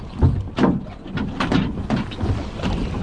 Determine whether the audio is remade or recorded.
recorded